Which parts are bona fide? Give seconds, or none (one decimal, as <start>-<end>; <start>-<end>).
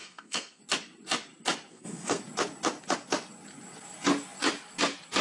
0.6-1.7; 2.2-5.2